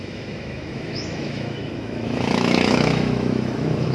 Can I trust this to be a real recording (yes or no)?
no